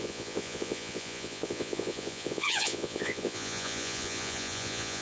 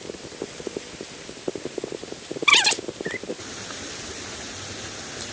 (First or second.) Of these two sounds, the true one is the second